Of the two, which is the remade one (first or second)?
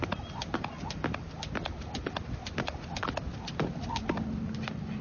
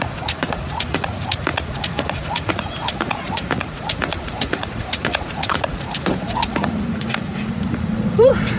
second